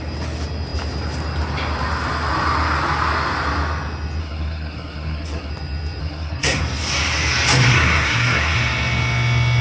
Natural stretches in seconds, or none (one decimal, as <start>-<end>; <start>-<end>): 0.0-4.2; 5.5-6.0; 6.6-7.7; 8.6-9.6